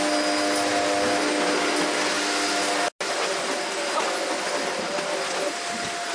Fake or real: real